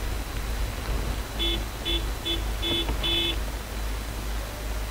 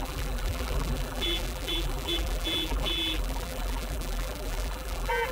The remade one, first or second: second